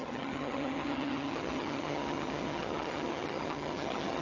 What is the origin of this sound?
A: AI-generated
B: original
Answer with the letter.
A